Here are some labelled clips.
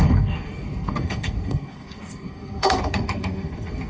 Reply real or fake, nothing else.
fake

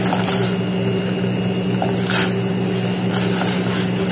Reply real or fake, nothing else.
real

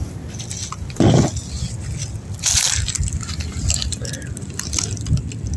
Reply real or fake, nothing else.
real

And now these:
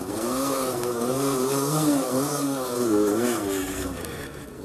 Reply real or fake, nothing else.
fake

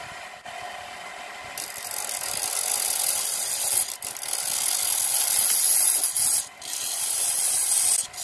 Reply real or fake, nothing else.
real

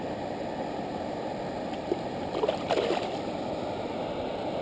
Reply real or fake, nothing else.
real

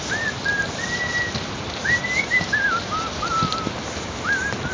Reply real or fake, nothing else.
real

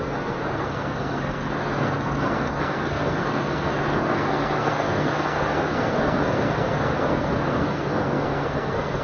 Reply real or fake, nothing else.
fake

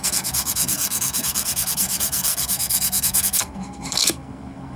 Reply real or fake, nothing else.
fake